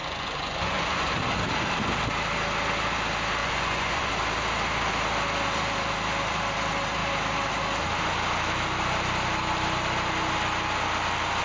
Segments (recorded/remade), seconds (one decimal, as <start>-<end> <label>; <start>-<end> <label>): 0.0-1.1 remade; 1.1-3.4 recorded; 3.4-4.1 remade; 4.1-11.4 recorded